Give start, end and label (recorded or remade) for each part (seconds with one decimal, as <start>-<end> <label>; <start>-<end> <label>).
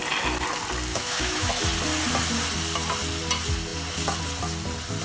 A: 0.0-0.9 recorded; 0.9-1.5 remade; 1.5-5.0 recorded